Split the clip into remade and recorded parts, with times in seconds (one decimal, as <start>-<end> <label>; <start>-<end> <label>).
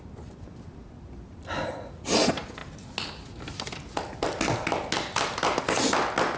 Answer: 0.0-6.4 recorded